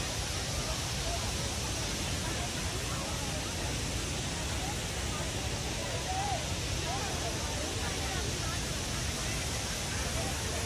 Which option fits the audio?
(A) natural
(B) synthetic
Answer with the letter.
A